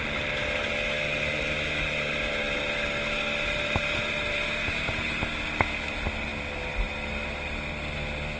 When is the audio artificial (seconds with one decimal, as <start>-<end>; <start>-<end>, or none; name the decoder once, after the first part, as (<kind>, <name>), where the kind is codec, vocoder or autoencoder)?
none